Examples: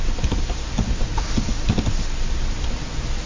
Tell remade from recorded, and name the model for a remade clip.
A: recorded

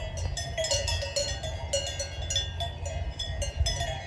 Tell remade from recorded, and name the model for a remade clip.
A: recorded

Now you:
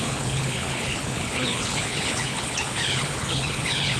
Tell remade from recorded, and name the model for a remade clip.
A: remade, codec, HILCodec